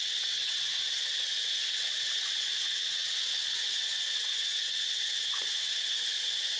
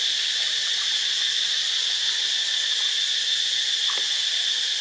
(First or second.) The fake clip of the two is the first